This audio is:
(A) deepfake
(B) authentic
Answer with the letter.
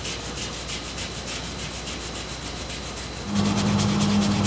B